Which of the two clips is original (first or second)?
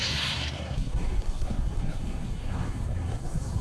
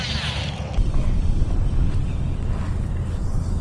second